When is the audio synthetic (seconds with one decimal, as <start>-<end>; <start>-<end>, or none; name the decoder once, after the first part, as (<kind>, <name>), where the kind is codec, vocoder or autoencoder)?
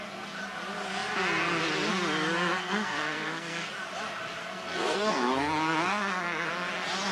2.6-3.7 (codec, SNAC); 4.4-6.5